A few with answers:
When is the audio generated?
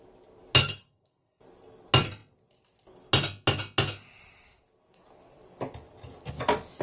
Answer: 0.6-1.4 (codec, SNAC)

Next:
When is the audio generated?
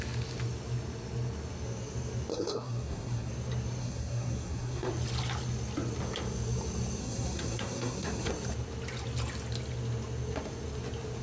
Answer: 2.3-3.3 (codec, SNAC); 3.8-4.9; 7.0-8.3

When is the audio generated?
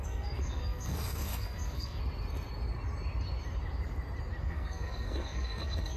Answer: 0.0-2.0 (codec, SNAC); 4.4-6.0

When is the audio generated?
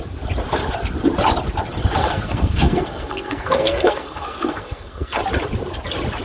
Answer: 2.0-5.2 (codec, SNAC)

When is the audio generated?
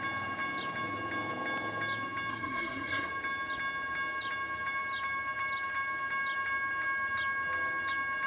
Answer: 2.3-3.1 (codec, SNAC)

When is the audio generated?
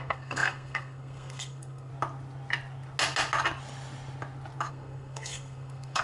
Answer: 0.0-1.9 (codec, SNAC); 4.7-6.0